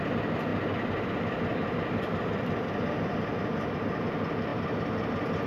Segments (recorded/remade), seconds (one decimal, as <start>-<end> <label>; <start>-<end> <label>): 0.0-5.5 recorded